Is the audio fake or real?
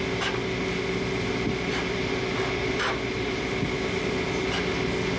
real